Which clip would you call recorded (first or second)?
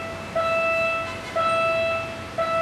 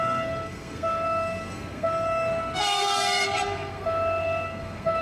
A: first